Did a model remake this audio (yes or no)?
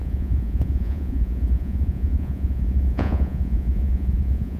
yes